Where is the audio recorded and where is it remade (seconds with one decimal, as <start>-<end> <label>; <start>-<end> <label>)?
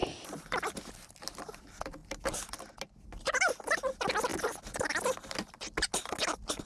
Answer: 0.0-6.7 recorded